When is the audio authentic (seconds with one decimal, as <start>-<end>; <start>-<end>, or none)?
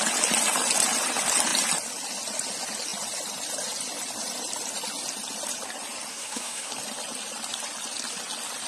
0.0-6.1; 6.7-8.7